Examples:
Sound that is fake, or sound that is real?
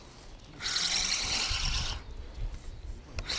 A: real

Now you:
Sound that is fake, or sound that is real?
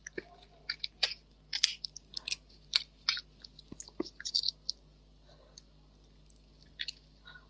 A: real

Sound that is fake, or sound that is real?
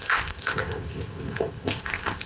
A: fake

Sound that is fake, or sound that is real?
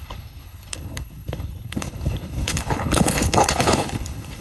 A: fake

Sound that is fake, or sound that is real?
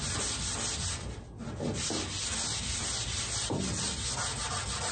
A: real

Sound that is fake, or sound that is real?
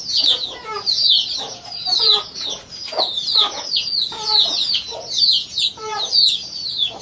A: fake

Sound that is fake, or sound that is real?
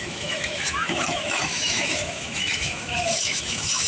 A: fake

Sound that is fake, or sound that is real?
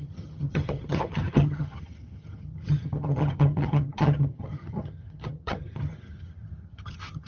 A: fake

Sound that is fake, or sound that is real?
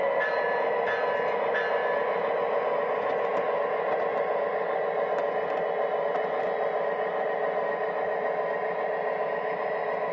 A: real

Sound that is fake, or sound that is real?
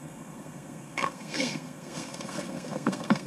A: fake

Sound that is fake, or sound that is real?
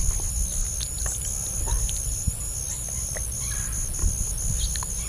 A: real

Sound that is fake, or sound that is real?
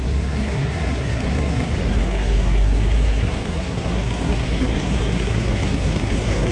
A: fake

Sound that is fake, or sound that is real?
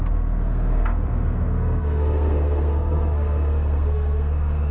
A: fake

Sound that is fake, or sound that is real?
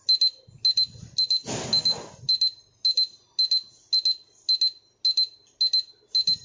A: real